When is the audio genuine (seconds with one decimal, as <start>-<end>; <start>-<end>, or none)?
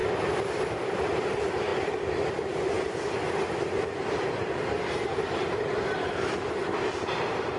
0.0-0.6; 1.7-4.7